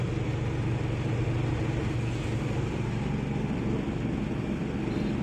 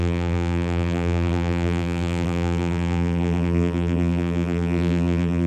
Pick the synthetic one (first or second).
second